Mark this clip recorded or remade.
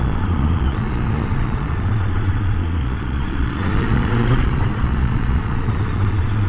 remade